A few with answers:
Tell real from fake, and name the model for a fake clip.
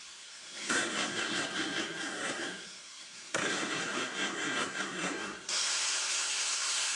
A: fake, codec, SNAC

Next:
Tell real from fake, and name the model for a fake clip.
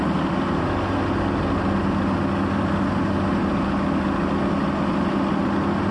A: real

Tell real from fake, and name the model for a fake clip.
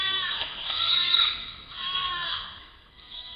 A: fake, codec, SNAC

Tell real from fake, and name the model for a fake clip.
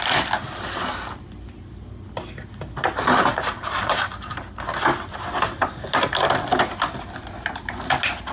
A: real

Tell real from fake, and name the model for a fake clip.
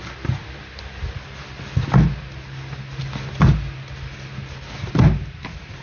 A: real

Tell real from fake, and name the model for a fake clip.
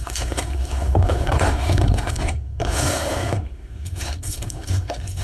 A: fake, codec, SNAC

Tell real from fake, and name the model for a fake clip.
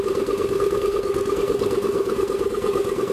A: fake, codec, SNAC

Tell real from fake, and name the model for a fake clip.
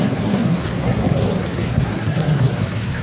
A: fake, codec, SNAC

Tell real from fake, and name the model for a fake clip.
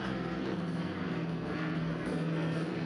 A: fake, codec, SNAC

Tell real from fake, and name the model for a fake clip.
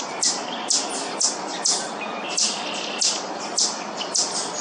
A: real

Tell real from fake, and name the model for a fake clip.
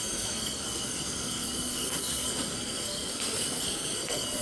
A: fake, codec, SNAC